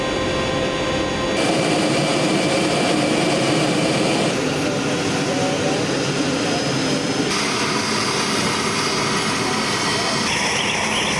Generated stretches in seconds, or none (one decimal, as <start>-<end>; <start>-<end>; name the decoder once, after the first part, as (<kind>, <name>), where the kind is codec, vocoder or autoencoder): none